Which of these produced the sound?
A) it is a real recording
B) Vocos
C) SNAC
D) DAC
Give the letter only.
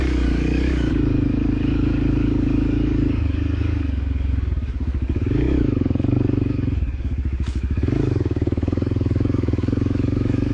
D